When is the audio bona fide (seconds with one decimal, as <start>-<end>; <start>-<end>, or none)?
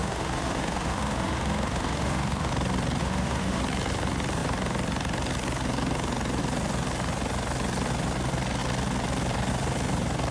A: 2.5-3.0; 3.6-10.3